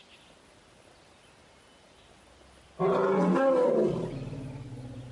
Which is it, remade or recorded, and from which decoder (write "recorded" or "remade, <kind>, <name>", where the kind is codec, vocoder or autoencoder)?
recorded